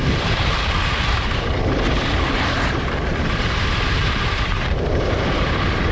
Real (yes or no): no